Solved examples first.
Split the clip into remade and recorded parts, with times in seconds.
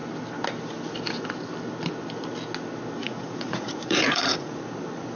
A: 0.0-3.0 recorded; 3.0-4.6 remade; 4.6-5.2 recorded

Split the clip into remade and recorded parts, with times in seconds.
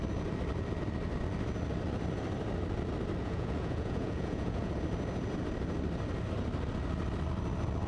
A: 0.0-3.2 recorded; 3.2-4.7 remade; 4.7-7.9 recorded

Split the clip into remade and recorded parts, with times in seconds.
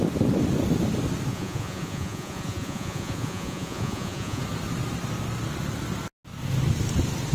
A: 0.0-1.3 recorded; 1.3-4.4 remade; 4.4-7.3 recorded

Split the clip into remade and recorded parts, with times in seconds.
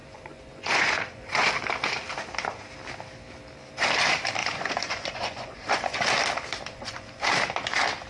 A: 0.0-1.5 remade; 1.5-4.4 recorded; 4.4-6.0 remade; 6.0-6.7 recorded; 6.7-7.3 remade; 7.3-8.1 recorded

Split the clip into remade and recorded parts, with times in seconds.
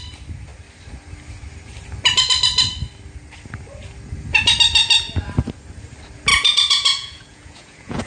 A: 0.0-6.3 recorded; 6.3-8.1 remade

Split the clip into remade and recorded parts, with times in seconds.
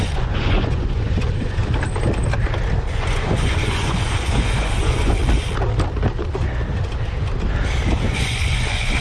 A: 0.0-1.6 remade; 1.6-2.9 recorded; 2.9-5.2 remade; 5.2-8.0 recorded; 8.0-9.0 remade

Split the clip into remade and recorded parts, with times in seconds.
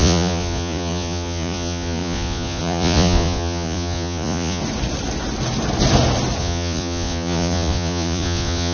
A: 0.0-4.6 remade; 4.6-6.4 recorded; 6.4-8.7 remade